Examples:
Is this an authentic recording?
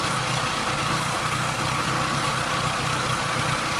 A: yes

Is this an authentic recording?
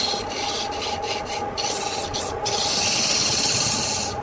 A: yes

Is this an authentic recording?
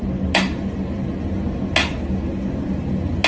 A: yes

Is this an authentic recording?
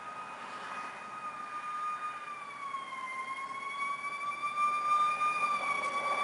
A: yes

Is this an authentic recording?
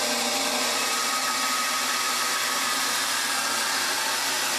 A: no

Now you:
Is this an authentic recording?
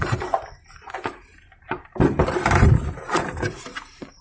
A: no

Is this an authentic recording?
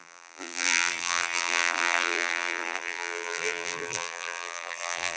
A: no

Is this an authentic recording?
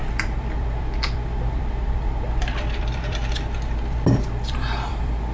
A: no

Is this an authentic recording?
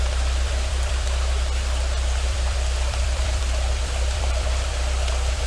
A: no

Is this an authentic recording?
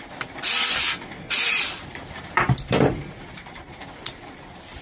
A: no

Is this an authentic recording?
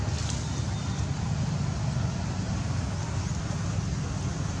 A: yes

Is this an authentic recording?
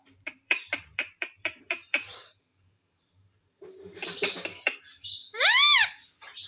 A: no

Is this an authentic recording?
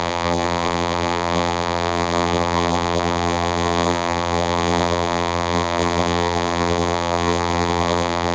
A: no